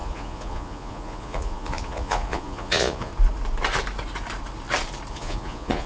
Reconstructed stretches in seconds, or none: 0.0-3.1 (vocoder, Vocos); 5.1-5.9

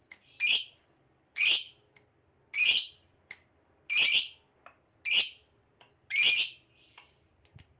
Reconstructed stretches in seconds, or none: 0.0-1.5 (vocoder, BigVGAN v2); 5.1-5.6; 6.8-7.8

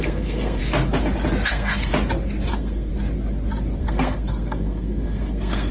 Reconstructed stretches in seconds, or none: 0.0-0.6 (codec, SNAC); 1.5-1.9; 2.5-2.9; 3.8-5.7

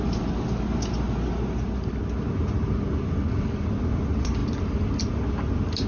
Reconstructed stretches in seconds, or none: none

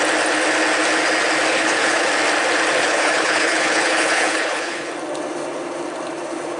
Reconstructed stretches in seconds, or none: 1.5-2.1 (codec, HILCodec); 2.8-4.9

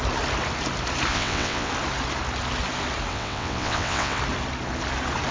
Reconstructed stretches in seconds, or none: 1.1-1.7 (vocoder, WaveNeXt); 3.1-4.2